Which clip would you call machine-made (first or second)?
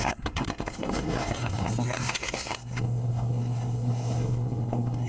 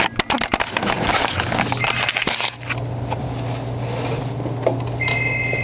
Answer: first